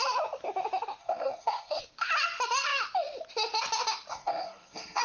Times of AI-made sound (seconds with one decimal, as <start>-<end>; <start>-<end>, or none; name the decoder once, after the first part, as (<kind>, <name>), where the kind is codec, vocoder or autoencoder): 1.0-1.8 (codec, SNAC); 4.1-5.0